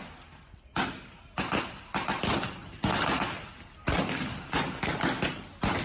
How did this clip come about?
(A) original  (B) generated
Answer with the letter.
A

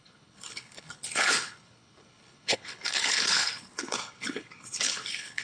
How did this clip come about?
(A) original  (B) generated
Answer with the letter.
B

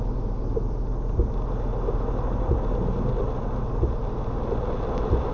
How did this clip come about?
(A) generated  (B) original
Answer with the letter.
B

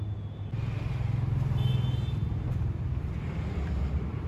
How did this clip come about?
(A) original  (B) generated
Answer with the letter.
A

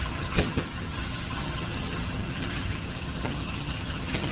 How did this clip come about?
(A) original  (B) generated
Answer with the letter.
B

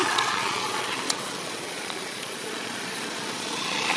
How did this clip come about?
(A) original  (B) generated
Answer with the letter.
B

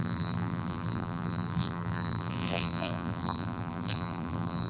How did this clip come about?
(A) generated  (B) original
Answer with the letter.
A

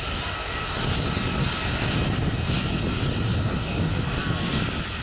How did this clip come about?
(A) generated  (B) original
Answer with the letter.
B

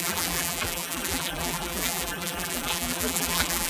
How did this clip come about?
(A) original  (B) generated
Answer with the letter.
B